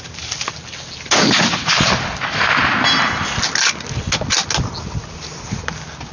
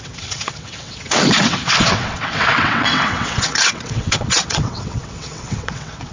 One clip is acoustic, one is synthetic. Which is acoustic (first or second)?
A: first